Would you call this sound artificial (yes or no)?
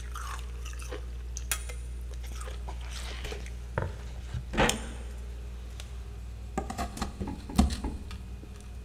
no